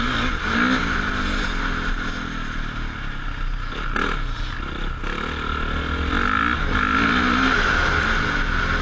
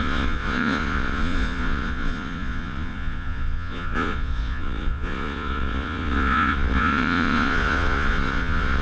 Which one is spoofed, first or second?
second